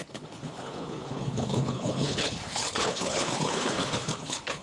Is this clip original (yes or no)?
no